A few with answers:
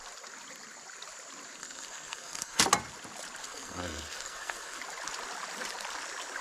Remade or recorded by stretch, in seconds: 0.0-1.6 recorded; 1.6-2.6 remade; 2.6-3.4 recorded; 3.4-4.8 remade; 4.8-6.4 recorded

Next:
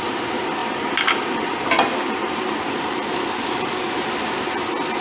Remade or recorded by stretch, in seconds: 0.0-0.6 recorded; 0.6-3.1 remade; 3.1-5.0 recorded